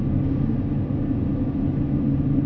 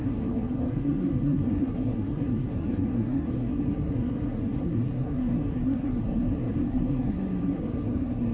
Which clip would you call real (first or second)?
first